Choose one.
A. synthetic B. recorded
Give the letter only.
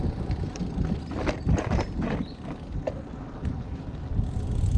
B